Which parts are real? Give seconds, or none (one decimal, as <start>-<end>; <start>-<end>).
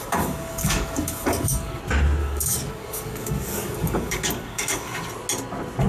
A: 1.8-2.2; 4.9-5.9